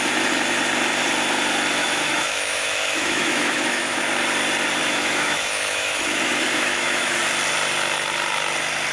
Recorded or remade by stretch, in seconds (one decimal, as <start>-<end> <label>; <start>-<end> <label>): 0.0-1.8 recorded; 1.8-4.0 remade; 4.0-4.8 recorded; 4.8-7.2 remade; 7.2-8.9 recorded